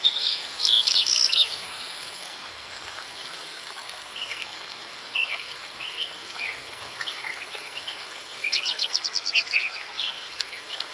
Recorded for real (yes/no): no